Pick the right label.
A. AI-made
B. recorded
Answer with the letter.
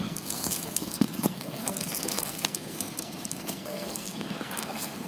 A